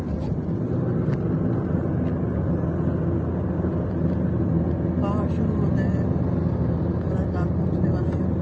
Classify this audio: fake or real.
real